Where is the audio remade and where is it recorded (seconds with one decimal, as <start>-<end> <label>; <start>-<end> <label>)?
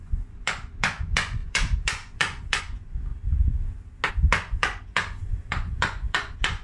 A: 0.0-3.1 remade; 3.1-4.1 recorded; 4.1-6.6 remade